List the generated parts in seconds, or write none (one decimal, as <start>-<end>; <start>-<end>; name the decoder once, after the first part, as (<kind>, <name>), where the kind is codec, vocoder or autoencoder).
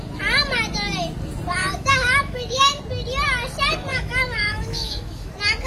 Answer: 1.6-2.8 (autoencoder, DAC-VAE); 3.9-5.3